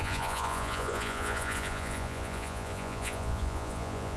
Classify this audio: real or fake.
fake